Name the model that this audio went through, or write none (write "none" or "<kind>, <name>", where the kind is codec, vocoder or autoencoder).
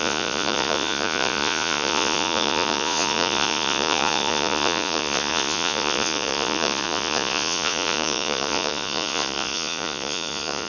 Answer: vocoder, Vocos